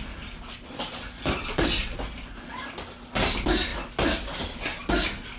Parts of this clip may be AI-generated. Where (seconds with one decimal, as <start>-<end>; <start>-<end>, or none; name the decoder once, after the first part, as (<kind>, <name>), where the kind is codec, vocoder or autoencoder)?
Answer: none